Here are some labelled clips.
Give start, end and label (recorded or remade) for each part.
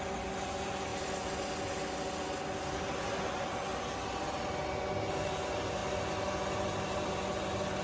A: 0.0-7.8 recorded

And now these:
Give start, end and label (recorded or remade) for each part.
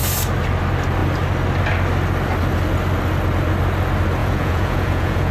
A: 0.0-4.2 recorded; 4.2-5.3 remade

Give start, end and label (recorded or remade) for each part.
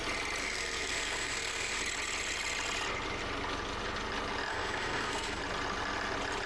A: 0.0-0.4 recorded; 0.4-1.8 remade; 1.8-4.5 recorded; 4.5-5.4 remade; 5.4-6.5 recorded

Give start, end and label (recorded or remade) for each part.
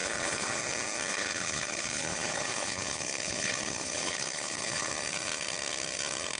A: 0.0-0.6 remade; 0.6-1.1 recorded; 1.1-4.9 remade; 4.9-6.4 recorded